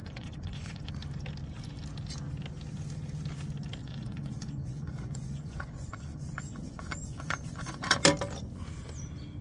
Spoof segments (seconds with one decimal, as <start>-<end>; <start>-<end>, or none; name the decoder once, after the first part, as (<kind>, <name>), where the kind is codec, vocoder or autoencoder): 0.0-0.9 (vocoder, Vocos); 3.8-8.0